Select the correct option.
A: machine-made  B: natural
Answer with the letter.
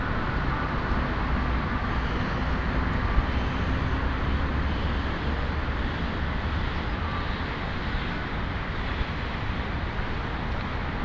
B